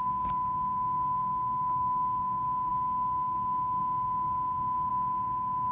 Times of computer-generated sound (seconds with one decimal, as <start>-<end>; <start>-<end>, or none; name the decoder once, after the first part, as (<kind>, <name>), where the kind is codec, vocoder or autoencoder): 1.2-2.2 (autoencoder, DAC-VAE); 2.7-3.8

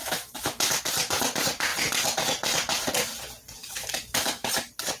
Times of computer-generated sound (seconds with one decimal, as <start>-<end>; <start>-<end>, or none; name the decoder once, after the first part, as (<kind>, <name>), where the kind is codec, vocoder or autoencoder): 0.0-0.8 (autoencoder, DAC-VAE); 3.6-4.5

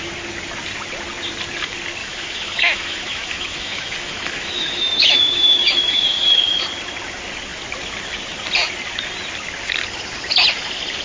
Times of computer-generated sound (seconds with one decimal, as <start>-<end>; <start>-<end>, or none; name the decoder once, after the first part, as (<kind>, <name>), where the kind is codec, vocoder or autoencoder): 2.0-6.6 (autoencoder, DAC-VAE)